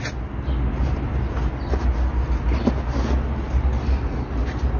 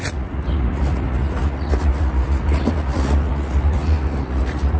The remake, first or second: second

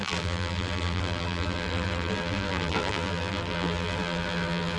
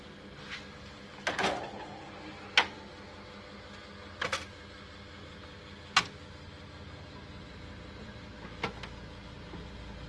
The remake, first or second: first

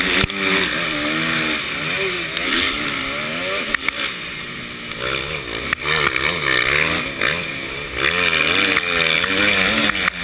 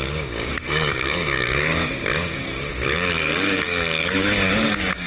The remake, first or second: second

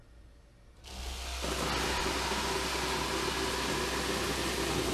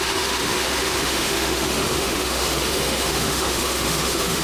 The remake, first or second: second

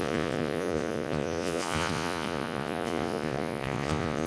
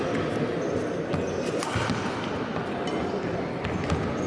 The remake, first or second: first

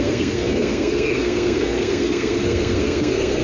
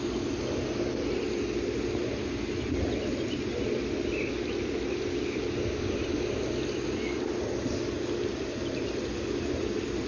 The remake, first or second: first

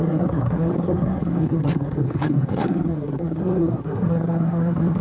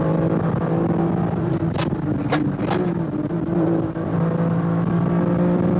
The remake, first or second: first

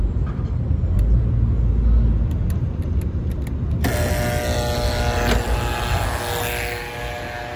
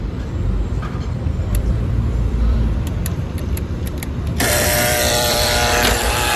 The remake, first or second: second